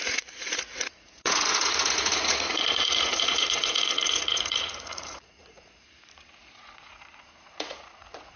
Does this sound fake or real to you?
fake